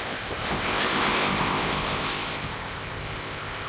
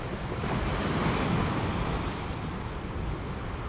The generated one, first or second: first